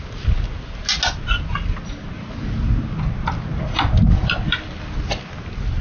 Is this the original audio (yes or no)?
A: yes